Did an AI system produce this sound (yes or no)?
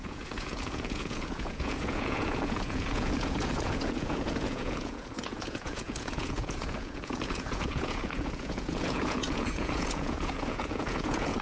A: yes